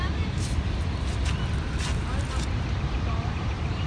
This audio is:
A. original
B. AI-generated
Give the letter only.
A